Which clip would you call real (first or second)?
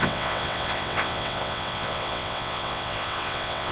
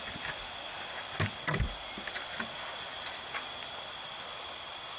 second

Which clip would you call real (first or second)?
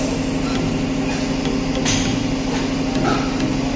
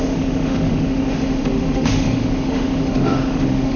first